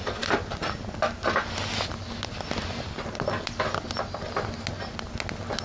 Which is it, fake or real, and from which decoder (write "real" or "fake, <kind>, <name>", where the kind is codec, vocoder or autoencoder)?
real